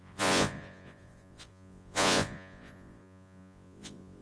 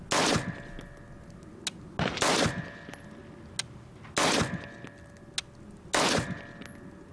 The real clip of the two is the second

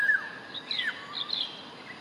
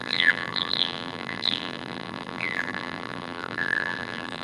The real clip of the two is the first